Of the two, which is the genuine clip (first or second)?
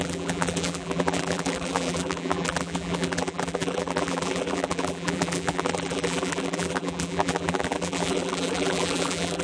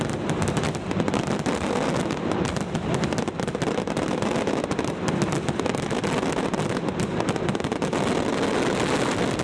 second